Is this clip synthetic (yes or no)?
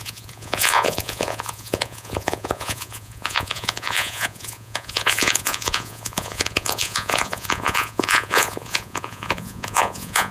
yes